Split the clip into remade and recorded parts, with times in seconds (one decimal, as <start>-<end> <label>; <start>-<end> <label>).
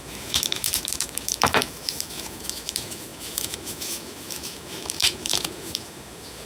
0.0-6.5 remade